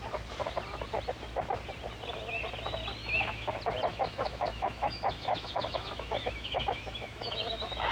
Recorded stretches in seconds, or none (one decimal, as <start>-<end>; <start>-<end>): 0.0-3.0; 3.5-3.9